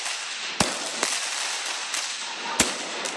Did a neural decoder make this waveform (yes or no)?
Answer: no